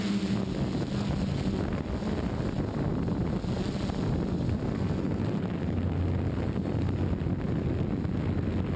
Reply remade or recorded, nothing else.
recorded